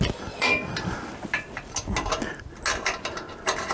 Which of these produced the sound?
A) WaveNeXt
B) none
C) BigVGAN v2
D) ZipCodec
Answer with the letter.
B